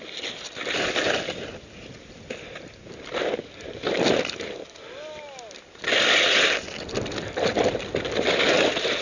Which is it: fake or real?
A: real